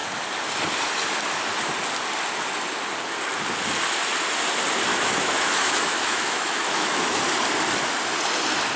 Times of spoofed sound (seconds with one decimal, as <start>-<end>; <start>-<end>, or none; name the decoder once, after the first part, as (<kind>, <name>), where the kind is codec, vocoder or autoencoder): 4.9-7.2 (autoencoder, DAC-VAE)